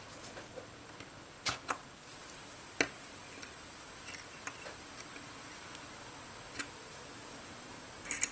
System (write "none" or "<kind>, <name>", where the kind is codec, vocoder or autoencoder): none